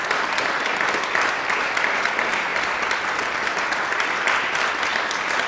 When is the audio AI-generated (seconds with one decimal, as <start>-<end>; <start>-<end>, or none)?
none